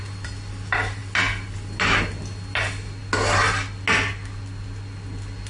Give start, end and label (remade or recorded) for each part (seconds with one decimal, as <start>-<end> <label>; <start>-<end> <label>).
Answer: 0.0-5.5 recorded